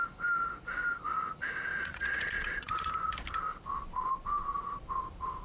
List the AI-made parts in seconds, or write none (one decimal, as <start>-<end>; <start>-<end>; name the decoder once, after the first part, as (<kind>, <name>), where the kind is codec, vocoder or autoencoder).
1.7-2.9 (vocoder, Vocos)